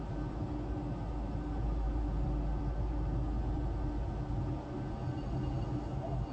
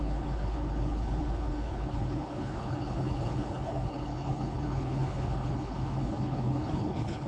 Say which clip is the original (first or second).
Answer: first